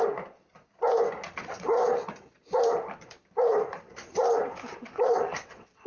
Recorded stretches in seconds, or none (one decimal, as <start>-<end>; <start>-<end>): 0.0-1.4; 2.1-4.8